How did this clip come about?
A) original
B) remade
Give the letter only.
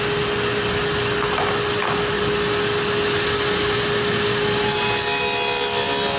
A